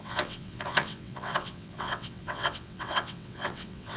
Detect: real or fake fake